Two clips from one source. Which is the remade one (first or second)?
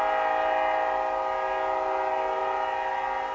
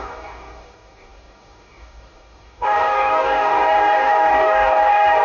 second